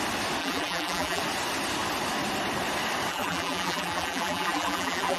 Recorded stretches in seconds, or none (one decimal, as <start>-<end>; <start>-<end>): 0.0-0.4; 1.2-3.1